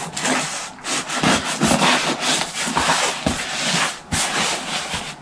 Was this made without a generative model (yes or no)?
yes